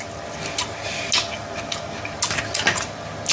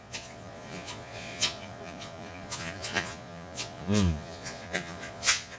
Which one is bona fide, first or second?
first